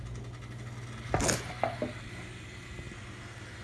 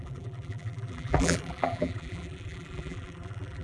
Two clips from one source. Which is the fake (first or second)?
second